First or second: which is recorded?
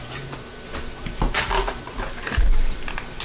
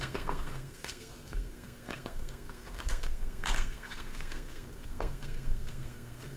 first